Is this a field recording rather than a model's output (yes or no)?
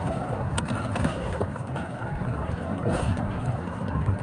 no